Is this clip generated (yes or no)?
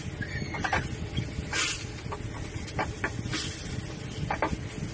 no